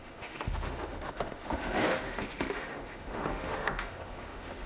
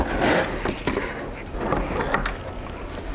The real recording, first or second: second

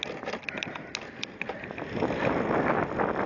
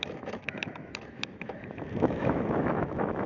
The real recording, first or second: first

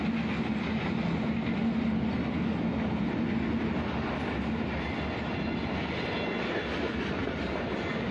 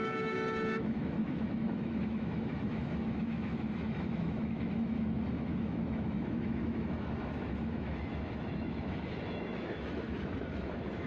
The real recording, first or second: first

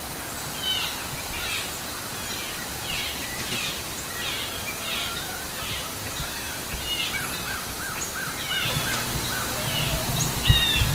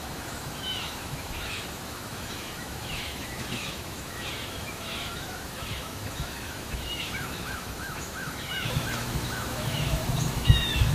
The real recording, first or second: first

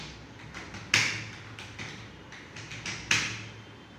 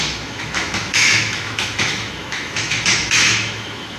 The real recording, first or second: first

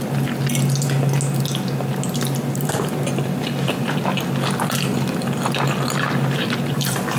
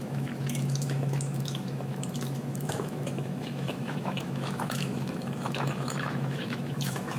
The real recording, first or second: first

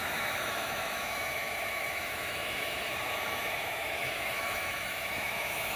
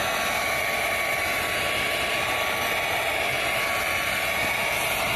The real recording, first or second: second